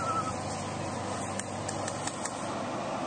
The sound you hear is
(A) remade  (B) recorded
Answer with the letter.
B